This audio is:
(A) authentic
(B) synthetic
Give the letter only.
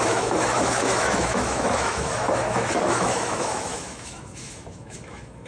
B